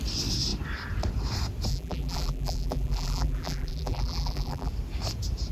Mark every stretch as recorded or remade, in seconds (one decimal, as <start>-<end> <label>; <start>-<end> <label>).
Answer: 0.0-1.7 recorded; 1.7-4.7 remade; 4.7-5.5 recorded